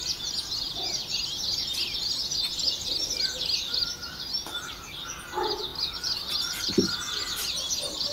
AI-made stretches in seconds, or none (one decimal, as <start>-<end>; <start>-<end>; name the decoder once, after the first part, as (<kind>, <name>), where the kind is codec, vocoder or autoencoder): 2.6-5.0 (vocoder, BigVGAN v2)

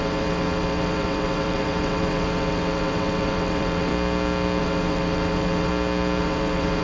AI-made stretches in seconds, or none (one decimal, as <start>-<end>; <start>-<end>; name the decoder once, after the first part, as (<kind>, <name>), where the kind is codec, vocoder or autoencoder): 0.0-3.9 (vocoder, WaveNeXt); 4.6-5.7; 6.2-6.8

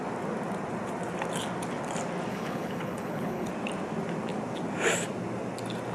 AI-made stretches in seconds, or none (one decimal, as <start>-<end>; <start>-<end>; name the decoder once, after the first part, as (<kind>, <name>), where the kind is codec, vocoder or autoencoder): 2.3-3.5 (codec, HILCodec)

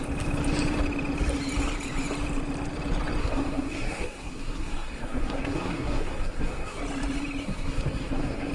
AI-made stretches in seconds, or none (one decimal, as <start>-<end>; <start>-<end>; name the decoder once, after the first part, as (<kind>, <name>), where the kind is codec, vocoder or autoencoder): 3.2-6.8 (codec, SNAC); 7.4-8.5